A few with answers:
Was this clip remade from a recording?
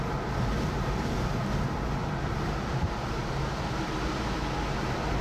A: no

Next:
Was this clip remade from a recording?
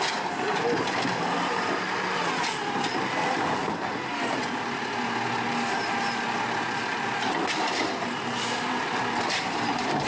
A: yes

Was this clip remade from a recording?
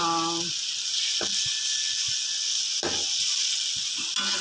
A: no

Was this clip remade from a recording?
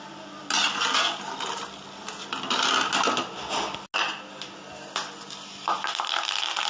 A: no